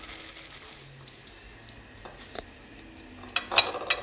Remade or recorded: recorded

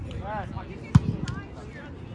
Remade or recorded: recorded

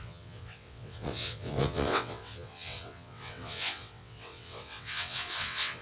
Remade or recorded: remade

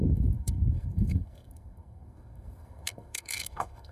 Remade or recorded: remade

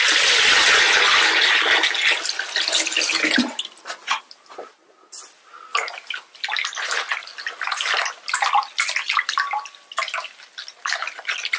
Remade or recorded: recorded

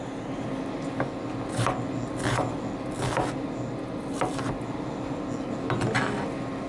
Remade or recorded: recorded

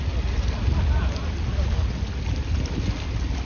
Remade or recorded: recorded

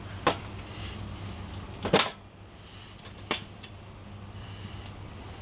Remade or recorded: recorded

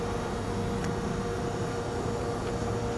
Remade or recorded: recorded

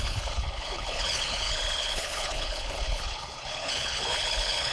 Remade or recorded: remade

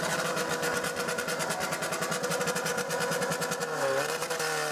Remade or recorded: recorded